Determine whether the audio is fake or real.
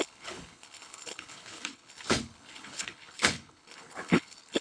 fake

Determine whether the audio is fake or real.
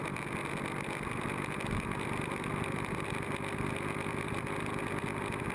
real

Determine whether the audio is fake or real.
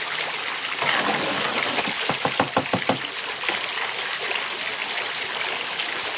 real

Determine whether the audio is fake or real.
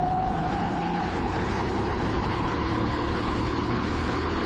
fake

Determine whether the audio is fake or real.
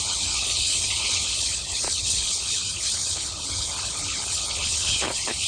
fake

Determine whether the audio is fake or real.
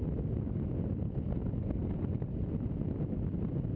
real